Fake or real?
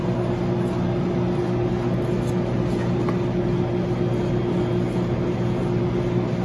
real